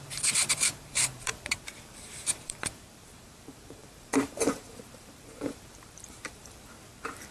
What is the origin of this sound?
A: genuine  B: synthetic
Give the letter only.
B